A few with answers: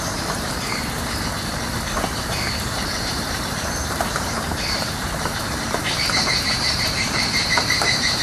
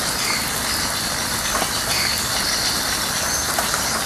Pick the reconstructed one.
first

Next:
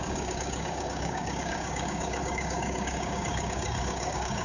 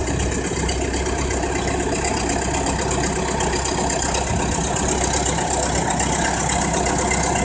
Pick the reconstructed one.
first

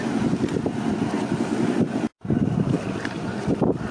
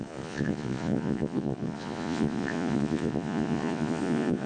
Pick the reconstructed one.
second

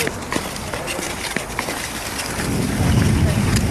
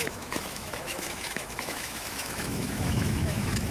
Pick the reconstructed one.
second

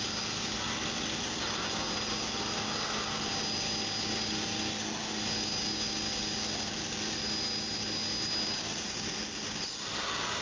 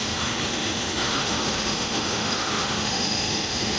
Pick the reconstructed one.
second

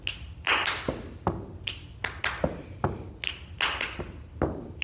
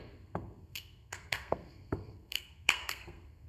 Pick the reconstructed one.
second